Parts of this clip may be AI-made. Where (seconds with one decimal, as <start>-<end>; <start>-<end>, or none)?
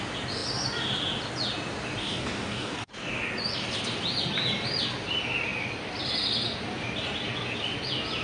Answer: 2.0-2.9